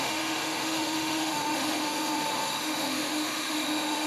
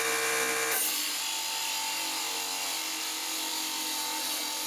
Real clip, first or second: second